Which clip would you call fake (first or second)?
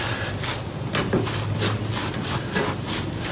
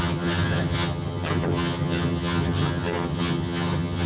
second